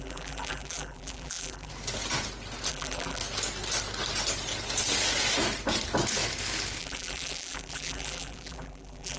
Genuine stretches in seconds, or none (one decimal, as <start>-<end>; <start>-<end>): 1.7-2.7; 3.2-6.8